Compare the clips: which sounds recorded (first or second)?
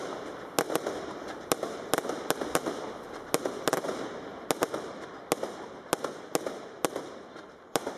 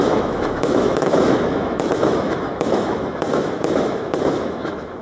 first